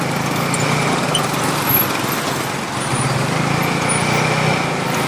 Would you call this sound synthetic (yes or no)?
no